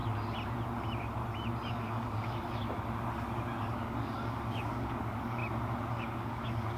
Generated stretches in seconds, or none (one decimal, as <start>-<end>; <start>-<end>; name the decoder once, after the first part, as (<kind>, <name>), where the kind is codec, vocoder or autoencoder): 1.7-2.6 (codec, DAC); 3.6-5.4; 5.9-6.8